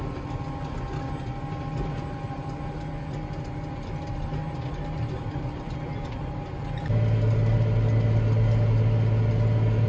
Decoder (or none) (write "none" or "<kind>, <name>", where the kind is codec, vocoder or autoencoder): none